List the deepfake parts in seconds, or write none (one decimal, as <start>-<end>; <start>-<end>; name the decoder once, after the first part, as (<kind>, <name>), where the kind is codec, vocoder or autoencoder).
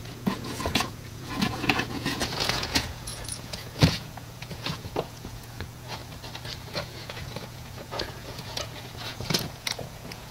0.0-6.0 (vocoder, Vocos); 6.7-10.3